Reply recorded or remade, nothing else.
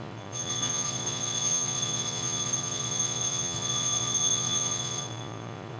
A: remade